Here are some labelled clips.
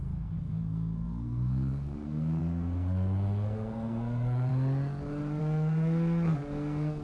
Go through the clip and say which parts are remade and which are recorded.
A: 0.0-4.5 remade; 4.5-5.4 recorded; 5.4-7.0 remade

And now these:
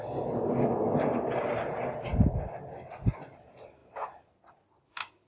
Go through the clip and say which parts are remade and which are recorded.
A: 0.0-5.3 recorded

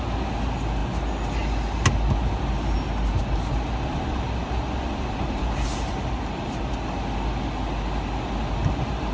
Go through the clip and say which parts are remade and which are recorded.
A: 0.0-9.1 recorded

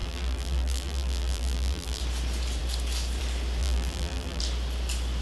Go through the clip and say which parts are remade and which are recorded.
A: 0.0-2.0 remade; 2.0-3.6 recorded; 3.6-4.4 remade; 4.4-5.2 recorded

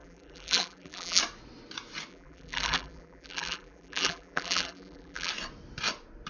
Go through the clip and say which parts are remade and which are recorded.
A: 0.0-1.2 remade; 1.2-2.1 recorded; 2.1-5.3 remade; 5.3-6.3 recorded